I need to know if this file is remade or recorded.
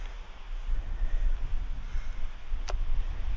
recorded